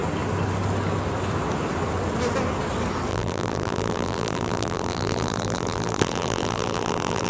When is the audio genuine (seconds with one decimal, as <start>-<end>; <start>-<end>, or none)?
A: 0.0-3.1